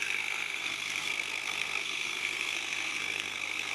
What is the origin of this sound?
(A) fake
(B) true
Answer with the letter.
A